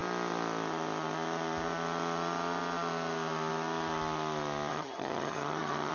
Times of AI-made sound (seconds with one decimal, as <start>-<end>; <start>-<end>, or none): 4.7-5.9